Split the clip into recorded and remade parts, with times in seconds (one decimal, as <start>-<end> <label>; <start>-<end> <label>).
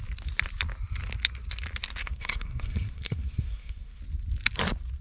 0.0-2.0 recorded; 2.0-4.0 remade; 4.0-5.0 recorded